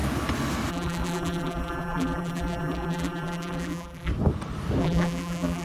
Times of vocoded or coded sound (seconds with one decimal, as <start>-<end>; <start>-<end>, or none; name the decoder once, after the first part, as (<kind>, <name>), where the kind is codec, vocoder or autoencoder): 0.7-4.1 (vocoder, BigVGAN v2); 4.8-5.6